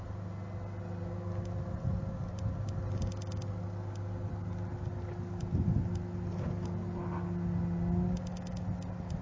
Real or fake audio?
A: real